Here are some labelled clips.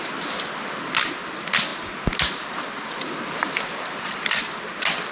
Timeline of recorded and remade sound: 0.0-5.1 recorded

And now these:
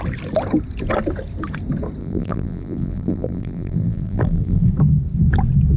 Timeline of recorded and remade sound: 0.0-2.0 recorded; 2.0-4.7 remade; 4.7-5.8 recorded

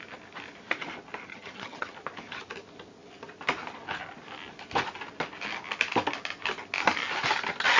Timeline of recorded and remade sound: 0.0-1.3 recorded; 1.3-1.9 remade; 1.9-7.8 recorded

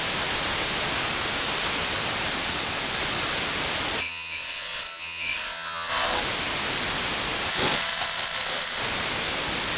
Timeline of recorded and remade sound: 0.0-4.0 recorded; 4.0-6.2 remade; 6.2-7.5 recorded; 7.5-8.8 remade; 8.8-9.8 recorded

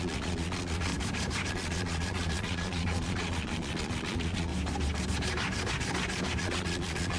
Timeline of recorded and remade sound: 0.0-0.9 remade; 0.9-1.5 recorded; 1.5-4.5 remade; 4.5-6.4 recorded; 6.4-7.2 remade

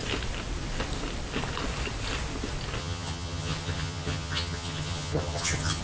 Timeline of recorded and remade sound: 0.0-2.8 recorded; 2.8-5.8 remade

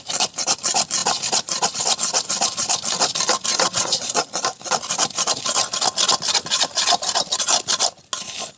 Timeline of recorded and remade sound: 0.0-3.5 recorded; 3.5-4.2 remade; 4.2-8.6 recorded

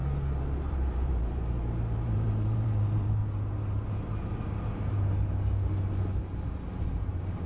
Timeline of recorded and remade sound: 0.0-0.6 recorded; 0.6-3.2 remade; 3.2-6.9 recorded; 6.9-7.5 remade